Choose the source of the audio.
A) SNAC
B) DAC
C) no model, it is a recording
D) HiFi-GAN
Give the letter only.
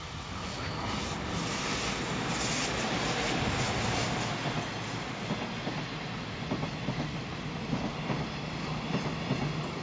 C